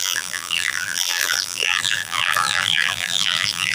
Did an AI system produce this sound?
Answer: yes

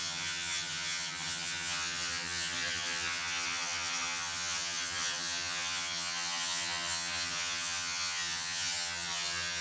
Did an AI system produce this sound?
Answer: yes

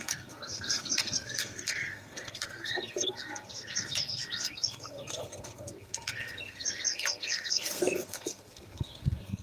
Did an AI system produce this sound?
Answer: yes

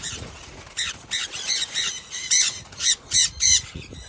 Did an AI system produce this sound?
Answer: yes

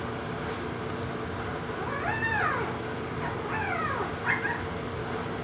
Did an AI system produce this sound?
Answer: no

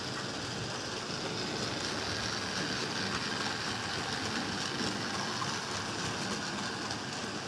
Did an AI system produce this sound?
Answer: no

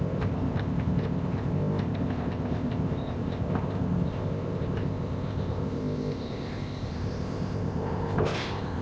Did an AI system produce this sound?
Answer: yes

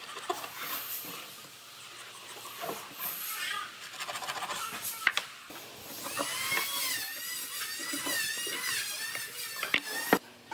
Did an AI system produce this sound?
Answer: no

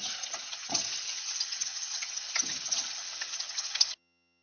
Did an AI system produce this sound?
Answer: yes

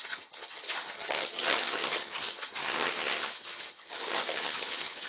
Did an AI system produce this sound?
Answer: yes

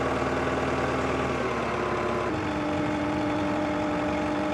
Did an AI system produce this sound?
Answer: no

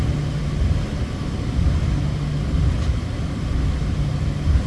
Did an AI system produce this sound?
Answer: no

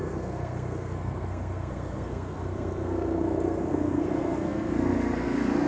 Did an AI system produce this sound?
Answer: yes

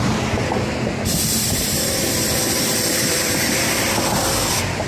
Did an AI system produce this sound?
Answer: yes